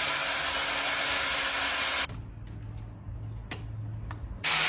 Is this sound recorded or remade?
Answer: recorded